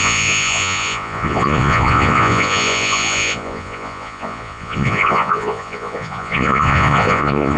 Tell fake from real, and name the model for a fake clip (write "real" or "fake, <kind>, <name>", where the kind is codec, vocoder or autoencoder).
fake, vocoder, Vocos